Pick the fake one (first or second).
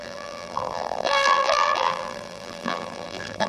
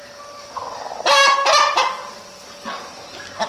first